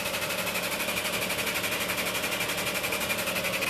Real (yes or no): yes